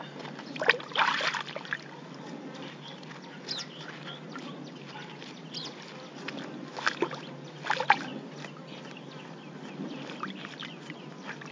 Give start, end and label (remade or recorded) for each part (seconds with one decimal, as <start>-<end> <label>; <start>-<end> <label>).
0.0-11.5 recorded